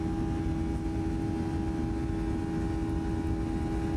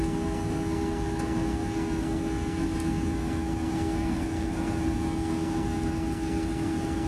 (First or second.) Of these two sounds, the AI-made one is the second